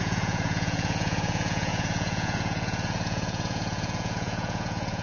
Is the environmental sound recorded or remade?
remade